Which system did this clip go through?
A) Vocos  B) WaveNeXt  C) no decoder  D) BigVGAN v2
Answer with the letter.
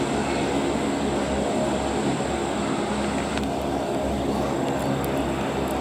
C